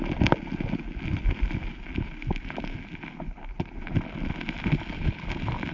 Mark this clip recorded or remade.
recorded